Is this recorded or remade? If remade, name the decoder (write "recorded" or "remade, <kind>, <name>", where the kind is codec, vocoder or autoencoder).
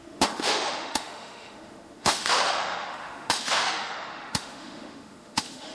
remade, autoencoder, DAC-VAE